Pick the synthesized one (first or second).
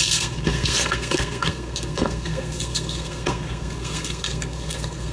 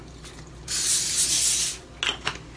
first